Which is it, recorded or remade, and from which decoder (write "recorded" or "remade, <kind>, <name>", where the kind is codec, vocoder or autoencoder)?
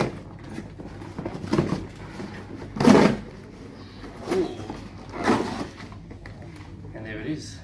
recorded